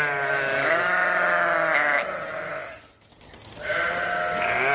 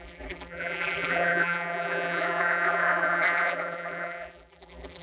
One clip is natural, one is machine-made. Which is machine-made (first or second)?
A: second